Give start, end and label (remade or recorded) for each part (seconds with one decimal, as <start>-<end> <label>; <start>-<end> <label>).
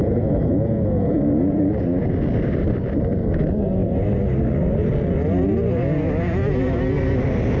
0.0-1.6 remade; 1.6-7.6 recorded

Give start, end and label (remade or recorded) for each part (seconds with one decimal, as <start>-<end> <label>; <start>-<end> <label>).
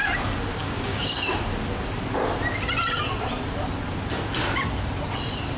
0.0-0.6 recorded; 0.6-1.4 remade; 1.4-5.6 recorded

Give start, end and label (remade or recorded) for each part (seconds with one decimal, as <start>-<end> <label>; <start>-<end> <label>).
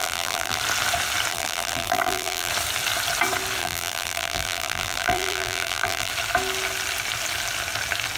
0.0-0.6 remade; 0.6-1.3 recorded; 1.3-2.5 remade; 2.5-3.6 recorded; 3.6-6.1 remade; 6.1-8.2 recorded